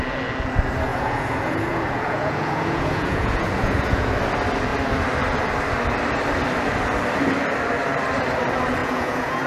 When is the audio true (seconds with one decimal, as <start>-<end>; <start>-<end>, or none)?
0.0-0.9; 4.1-8.8